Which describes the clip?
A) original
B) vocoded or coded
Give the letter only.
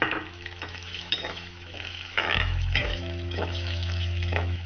B